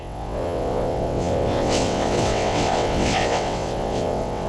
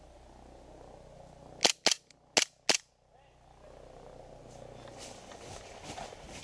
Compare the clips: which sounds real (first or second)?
second